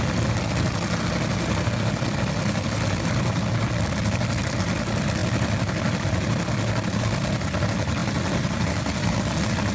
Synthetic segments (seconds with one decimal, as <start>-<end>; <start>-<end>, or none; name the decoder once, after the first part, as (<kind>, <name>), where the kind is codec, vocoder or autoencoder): none